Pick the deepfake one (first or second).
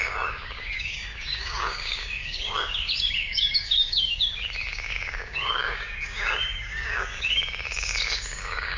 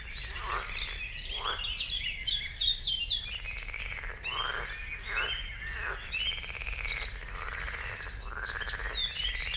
first